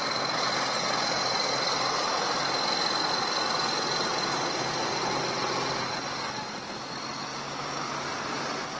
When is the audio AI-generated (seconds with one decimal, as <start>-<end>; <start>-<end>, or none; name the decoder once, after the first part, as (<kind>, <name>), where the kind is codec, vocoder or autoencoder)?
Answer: 7.3-7.9 (codec, DAC)